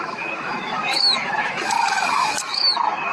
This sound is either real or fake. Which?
fake